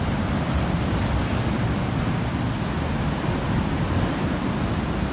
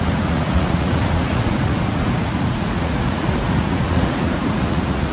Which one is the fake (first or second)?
second